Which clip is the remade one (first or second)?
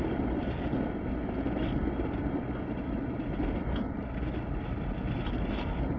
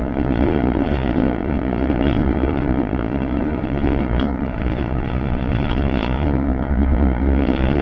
second